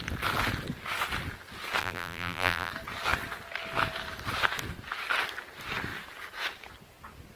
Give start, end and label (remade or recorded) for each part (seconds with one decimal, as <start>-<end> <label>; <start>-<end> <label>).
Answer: 0.0-1.8 recorded; 1.8-2.7 remade; 2.7-7.4 recorded